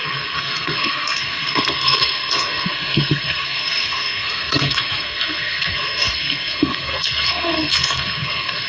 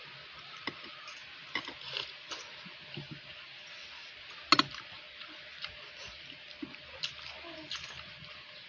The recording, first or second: second